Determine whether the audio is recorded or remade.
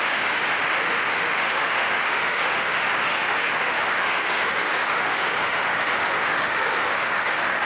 remade